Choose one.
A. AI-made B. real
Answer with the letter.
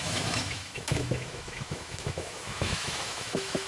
A